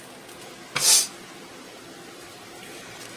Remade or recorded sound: recorded